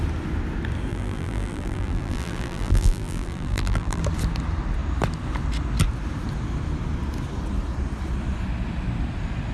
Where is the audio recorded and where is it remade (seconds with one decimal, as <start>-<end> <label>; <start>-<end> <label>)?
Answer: 0.0-0.9 recorded; 0.9-4.0 remade; 4.0-9.5 recorded